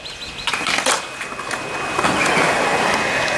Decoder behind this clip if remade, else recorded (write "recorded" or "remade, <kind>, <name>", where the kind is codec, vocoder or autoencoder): recorded